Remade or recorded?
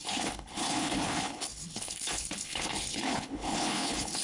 remade